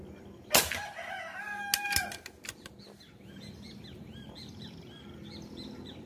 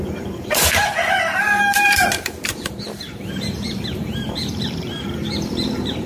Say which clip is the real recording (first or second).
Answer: first